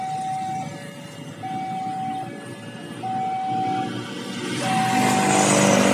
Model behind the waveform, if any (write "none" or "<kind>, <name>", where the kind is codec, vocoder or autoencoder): none